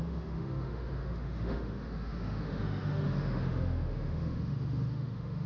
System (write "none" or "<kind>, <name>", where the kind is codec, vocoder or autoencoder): autoencoder, DAC-VAE